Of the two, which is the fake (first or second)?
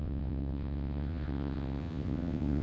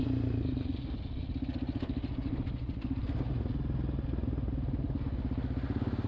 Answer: first